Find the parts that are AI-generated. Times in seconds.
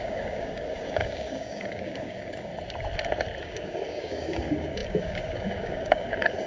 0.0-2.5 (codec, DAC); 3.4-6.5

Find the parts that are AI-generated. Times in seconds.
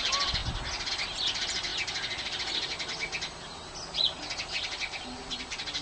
none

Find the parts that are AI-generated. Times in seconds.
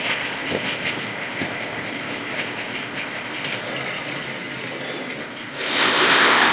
0.0-3.7 (codec, ZipCodec); 5.2-6.5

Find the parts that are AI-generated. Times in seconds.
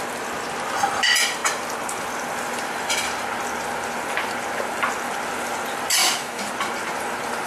6.0-6.5 (autoencoder, DAC-VAE)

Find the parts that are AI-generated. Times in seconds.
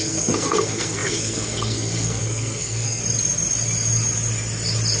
0.0-3.0 (codec, SNAC)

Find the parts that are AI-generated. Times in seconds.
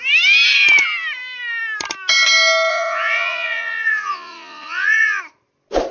2.7-5.2 (vocoder, Vocos)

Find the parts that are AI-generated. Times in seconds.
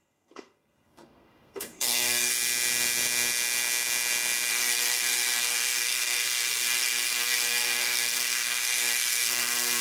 0.0-2.3 (codec, SNAC); 4.5-9.8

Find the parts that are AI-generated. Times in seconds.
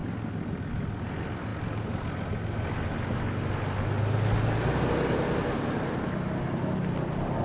none